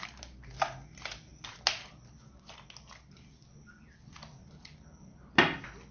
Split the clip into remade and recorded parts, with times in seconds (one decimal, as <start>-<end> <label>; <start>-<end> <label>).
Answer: 0.0-5.9 recorded